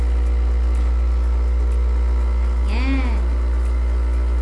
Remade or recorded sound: recorded